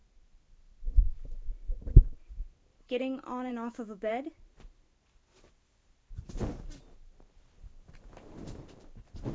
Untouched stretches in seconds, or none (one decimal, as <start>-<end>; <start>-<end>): 0.0-3.5; 4.1-9.3